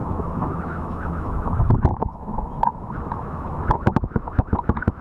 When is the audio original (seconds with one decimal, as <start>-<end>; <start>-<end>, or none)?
1.5-1.9